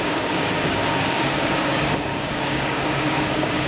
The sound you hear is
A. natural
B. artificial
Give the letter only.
B